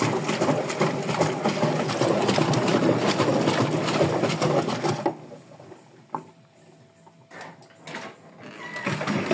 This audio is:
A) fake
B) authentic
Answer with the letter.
B